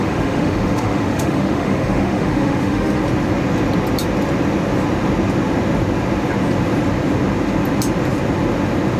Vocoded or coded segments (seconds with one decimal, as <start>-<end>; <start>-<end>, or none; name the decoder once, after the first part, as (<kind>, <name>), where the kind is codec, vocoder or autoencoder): 0.0-3.0 (autoencoder, DAC-VAE)